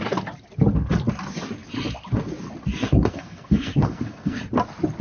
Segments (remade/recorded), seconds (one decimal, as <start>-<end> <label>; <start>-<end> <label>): 0.0-2.7 recorded; 2.7-4.4 remade; 4.4-5.0 recorded